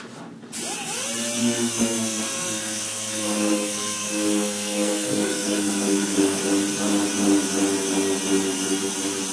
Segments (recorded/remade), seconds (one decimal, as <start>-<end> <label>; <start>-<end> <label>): 0.0-1.4 recorded; 1.4-6.4 remade; 6.4-9.3 recorded